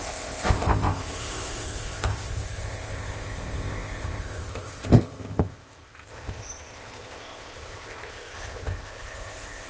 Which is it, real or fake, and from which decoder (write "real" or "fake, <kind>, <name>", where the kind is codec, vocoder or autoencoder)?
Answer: fake, codec, ZipCodec